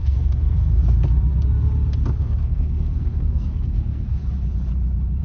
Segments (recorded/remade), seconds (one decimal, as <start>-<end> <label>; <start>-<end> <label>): 0.0-0.8 remade; 0.8-2.2 recorded; 2.2-4.2 remade; 4.2-5.2 recorded